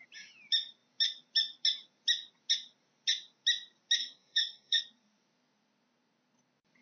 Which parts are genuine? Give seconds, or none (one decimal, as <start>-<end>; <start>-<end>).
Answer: 0.0-4.0; 4.8-6.8